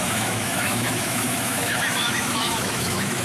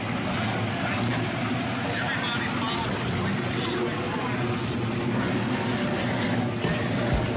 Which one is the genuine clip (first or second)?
second